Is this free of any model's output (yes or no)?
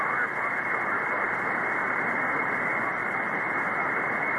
yes